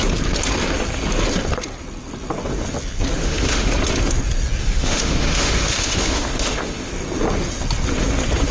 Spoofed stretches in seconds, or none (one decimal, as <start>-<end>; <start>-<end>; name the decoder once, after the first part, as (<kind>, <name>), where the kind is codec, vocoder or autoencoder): 3.2-3.7 (autoencoder, DAC-VAE); 4.6-6.9